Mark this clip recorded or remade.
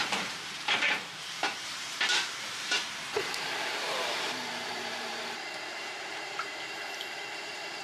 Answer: remade